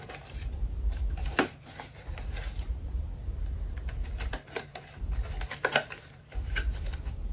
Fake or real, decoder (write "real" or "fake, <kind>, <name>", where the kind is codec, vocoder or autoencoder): real